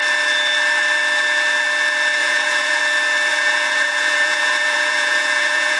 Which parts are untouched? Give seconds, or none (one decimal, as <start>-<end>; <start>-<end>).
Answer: 0.0-2.2; 2.8-3.3